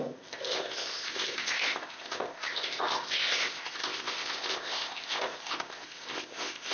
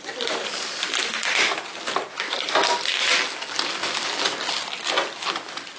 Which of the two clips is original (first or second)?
second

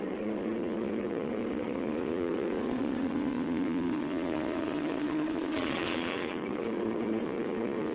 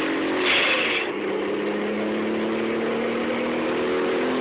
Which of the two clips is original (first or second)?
second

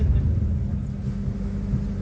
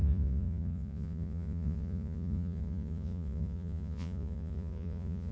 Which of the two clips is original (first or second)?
first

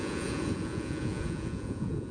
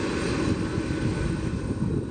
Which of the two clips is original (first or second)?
second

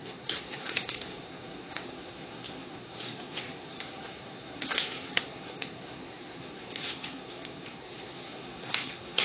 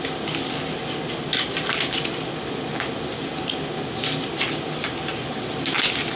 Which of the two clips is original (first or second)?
second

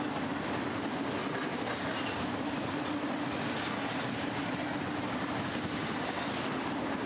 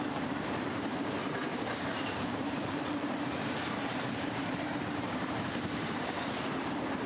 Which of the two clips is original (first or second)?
first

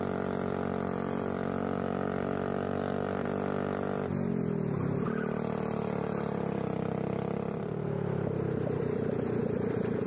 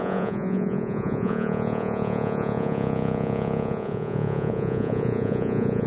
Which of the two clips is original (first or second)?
first